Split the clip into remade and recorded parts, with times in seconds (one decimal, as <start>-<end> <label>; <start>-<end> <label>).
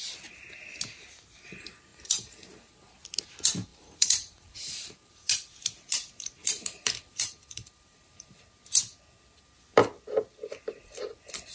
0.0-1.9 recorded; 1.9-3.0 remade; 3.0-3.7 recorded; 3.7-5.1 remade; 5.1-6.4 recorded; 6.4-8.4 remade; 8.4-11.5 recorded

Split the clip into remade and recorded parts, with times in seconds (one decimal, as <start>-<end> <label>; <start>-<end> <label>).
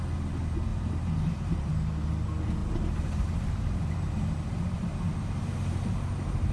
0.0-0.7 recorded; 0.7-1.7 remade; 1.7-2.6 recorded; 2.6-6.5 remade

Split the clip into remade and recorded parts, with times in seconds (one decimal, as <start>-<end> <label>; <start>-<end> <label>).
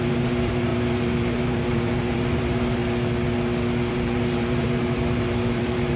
0.0-2.8 remade; 2.8-3.9 recorded; 3.9-6.0 remade